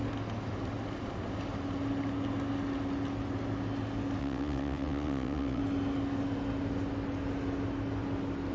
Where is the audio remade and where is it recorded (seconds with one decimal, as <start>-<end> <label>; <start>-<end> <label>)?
0.0-4.2 recorded; 4.2-5.6 remade; 5.6-8.5 recorded